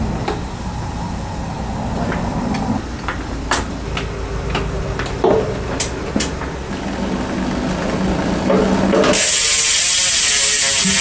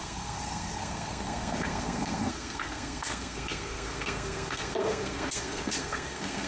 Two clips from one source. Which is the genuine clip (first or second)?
first